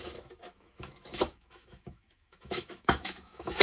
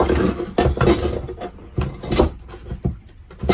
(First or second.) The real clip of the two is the second